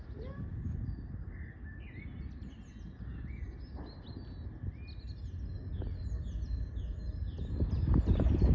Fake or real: real